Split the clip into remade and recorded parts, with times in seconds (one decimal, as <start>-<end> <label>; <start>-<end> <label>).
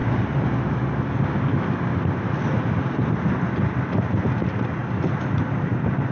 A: 0.0-6.1 recorded